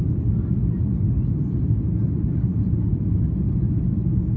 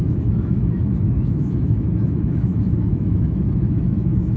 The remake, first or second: second